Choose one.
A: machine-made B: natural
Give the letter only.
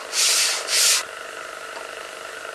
B